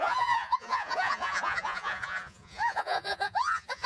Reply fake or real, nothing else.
fake